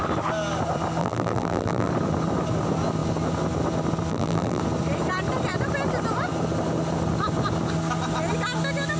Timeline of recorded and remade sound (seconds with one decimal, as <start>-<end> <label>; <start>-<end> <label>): 0.0-1.0 recorded; 1.0-1.9 remade; 1.9-4.1 recorded; 4.1-4.6 remade; 4.6-9.0 recorded